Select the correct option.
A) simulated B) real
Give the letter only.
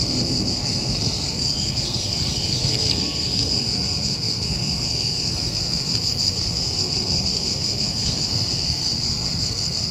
A